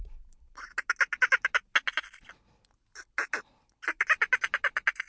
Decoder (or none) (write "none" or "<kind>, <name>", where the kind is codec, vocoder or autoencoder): none